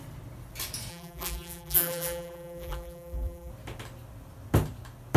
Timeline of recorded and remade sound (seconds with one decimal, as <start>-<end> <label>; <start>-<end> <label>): 0.0-0.9 recorded; 0.9-3.5 remade; 3.5-5.2 recorded